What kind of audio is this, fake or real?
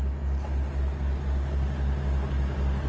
real